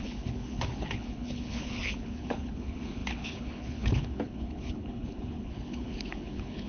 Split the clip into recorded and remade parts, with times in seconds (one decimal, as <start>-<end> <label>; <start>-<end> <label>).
0.0-6.7 remade